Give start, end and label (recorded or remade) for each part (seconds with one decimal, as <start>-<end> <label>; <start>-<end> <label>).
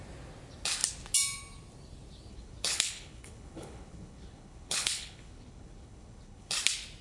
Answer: 0.0-2.3 recorded; 2.3-6.5 remade; 6.5-7.0 recorded